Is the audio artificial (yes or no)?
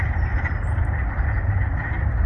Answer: no